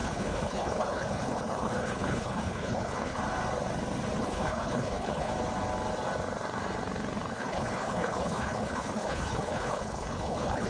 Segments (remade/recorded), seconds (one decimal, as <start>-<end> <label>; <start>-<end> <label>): 0.0-3.2 remade; 3.2-4.2 recorded; 4.2-5.3 remade; 5.3-7.3 recorded; 7.3-10.7 remade